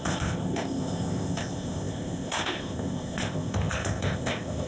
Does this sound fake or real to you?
fake